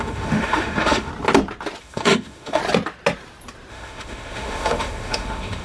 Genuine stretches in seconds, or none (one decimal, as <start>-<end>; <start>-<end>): 1.1-1.8; 2.6-3.7